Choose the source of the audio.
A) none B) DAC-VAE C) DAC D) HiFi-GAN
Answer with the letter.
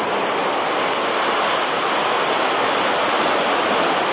A